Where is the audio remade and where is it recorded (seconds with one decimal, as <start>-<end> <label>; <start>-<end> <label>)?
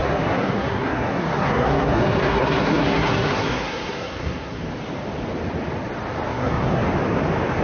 0.0-4.6 remade; 4.6-6.3 recorded; 6.3-6.8 remade; 6.8-7.6 recorded